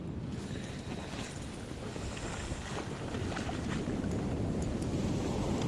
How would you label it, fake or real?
real